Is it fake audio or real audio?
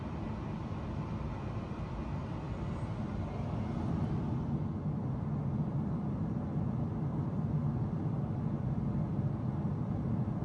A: real